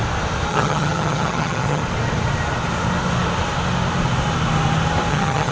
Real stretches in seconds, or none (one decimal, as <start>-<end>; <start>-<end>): 0.0-0.5; 1.8-5.1

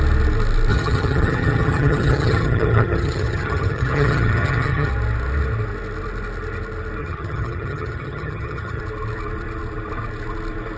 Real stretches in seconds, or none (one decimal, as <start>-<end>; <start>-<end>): 0.0-0.7; 4.9-7.0; 8.8-10.8

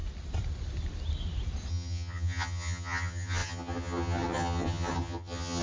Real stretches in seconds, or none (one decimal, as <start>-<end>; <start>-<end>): 0.0-1.7

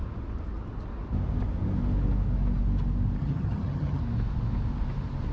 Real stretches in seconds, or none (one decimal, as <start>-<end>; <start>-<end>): 0.0-3.2; 4.0-5.3

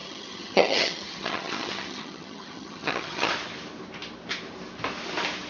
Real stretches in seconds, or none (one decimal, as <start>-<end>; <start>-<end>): 3.3-5.5